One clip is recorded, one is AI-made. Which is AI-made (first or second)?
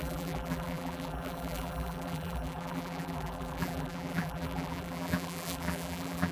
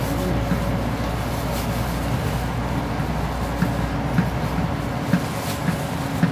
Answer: first